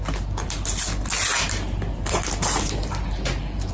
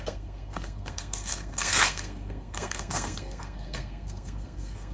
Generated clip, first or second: second